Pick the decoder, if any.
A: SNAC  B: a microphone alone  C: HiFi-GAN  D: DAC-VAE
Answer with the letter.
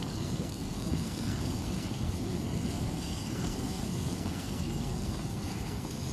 A